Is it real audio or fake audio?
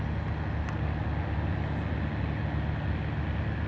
real